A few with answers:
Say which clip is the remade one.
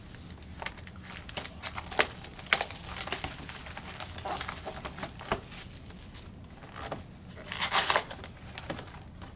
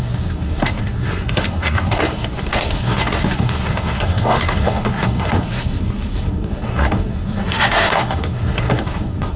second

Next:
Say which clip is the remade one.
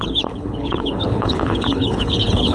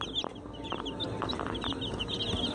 first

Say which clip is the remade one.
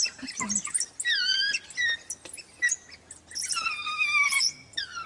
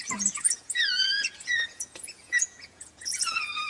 second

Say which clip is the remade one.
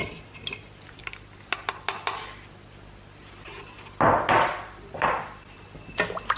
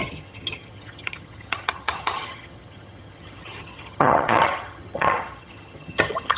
second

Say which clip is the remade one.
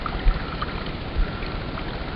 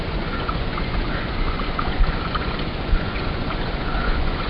second